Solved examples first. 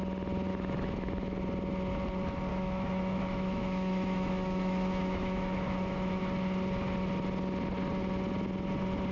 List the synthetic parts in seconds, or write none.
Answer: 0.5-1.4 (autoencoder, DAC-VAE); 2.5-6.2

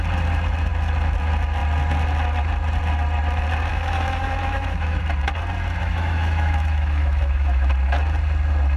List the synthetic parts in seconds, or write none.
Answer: 3.7-5.0 (autoencoder, DAC-VAE); 5.8-7.7

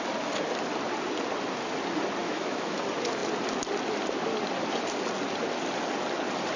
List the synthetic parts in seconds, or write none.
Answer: 2.2-2.8 (autoencoder, DAC-VAE)

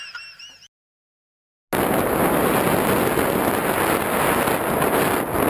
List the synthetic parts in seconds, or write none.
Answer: none

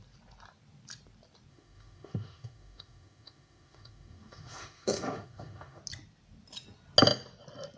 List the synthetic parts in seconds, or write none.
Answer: 1.5-5.8 (autoencoder, DAC-VAE)

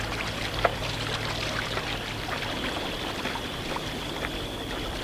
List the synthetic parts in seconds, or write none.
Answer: none

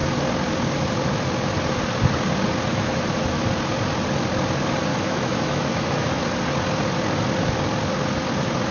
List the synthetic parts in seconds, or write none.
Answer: 2.7-3.4 (autoencoder, DAC-VAE); 4.9-6.2

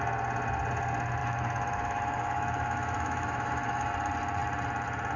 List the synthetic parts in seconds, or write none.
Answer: 1.2-3.9 (autoencoder, DAC-VAE)